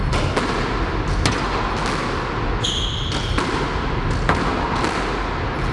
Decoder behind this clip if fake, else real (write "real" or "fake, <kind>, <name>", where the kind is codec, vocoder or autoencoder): real